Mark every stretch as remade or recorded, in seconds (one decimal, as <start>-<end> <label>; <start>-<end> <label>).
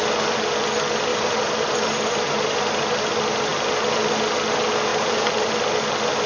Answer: 0.0-1.1 recorded; 1.1-3.1 remade; 3.1-4.9 recorded; 4.9-5.5 remade; 5.5-6.3 recorded